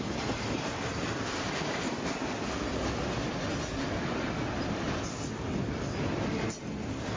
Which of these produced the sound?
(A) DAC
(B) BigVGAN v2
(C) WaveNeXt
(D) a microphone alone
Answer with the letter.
D